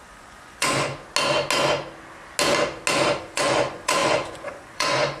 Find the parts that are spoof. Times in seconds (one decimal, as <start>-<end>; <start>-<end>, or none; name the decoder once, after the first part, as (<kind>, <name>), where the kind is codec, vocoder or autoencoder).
0.0-0.9 (vocoder, Vocos); 3.2-5.2